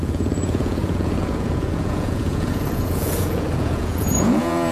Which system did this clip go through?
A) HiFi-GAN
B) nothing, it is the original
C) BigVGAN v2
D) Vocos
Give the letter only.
D